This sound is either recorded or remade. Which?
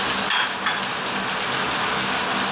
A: recorded